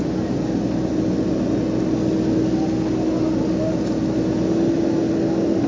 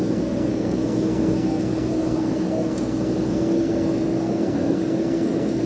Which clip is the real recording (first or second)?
first